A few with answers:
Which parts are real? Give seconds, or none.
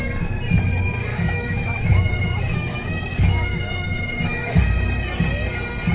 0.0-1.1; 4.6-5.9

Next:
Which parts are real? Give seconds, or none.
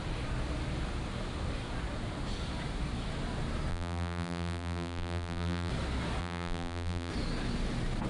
0.0-3.7; 5.7-6.2; 7.1-8.1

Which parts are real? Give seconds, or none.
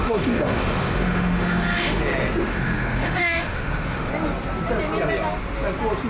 2.0-2.5; 4.1-6.1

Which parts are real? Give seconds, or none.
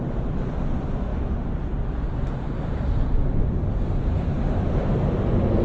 0.0-5.6